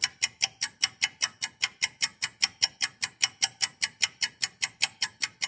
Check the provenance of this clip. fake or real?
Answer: fake